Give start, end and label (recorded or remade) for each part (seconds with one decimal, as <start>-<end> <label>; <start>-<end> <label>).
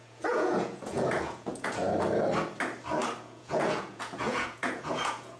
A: 0.0-1.8 remade; 1.8-3.2 recorded; 3.2-5.4 remade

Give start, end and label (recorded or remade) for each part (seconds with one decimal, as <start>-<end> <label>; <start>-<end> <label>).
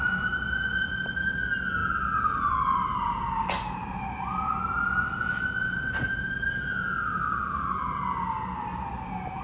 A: 0.0-9.4 recorded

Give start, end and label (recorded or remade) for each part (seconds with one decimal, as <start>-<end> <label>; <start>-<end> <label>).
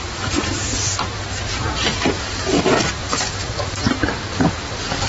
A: 0.0-5.1 recorded